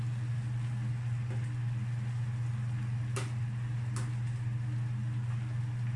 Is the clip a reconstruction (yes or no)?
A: no